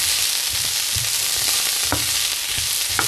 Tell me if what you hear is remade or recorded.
recorded